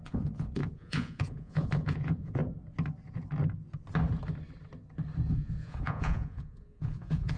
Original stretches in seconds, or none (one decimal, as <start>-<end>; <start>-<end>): 2.4-5.3